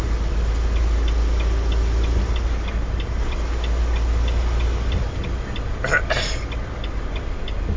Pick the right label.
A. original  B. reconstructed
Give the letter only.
A